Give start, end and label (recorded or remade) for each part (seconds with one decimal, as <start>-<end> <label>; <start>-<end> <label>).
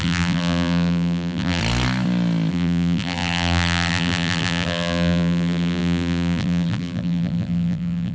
0.0-1.6 remade; 1.6-2.5 recorded; 2.5-8.1 remade